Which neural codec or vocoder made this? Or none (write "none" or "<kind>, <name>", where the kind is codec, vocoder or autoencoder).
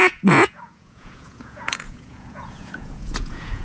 vocoder, Vocos